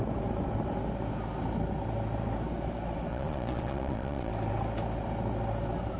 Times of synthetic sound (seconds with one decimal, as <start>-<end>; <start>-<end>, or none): 3.1-4.3